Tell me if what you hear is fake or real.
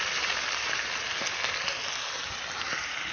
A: real